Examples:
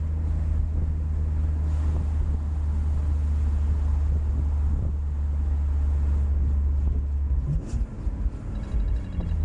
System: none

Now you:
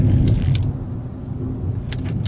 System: none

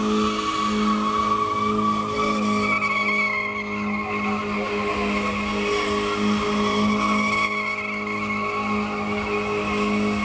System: none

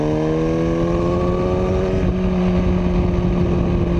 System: none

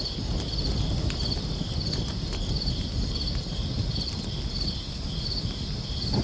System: none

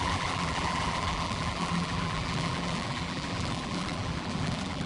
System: vocoder, BigVGAN v2